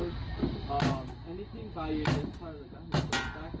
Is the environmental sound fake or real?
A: real